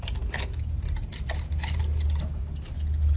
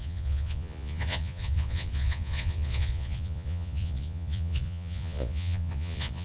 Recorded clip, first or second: first